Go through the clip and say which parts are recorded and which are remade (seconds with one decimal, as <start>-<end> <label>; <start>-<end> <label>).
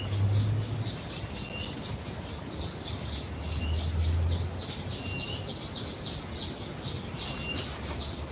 0.0-8.3 recorded